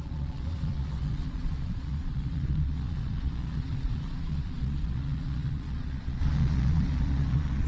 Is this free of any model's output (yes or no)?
no